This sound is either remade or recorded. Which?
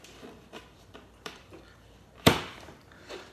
remade